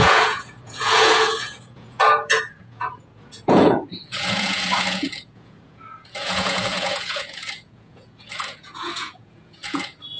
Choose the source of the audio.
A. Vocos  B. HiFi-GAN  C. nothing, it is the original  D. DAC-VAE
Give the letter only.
A